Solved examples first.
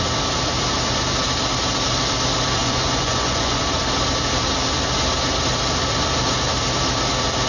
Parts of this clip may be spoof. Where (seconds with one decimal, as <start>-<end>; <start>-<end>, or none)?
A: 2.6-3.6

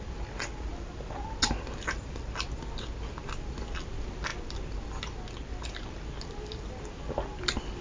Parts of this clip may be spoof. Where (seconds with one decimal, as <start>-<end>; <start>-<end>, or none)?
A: none

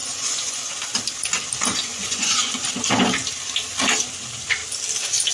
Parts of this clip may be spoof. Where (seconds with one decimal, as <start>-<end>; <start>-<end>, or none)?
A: 0.0-0.7; 1.8-2.6

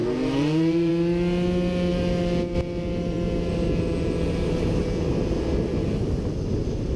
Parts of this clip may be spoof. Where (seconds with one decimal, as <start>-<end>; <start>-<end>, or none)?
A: 0.0-0.9

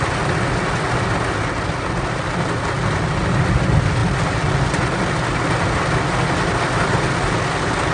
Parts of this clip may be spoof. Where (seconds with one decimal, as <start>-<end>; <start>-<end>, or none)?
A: none

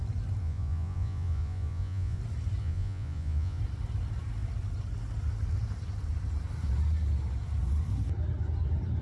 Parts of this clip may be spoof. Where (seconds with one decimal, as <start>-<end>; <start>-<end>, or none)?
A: 0.4-2.2; 2.6-3.6